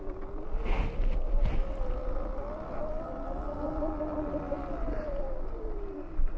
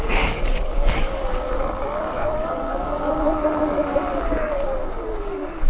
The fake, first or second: second